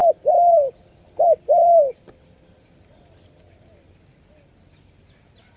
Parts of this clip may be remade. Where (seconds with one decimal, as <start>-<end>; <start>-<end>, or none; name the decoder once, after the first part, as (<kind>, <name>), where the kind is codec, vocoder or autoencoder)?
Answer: 0.0-5.6 (vocoder, BigVGAN v2)